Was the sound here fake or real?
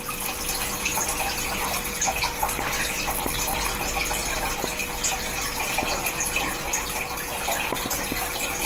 real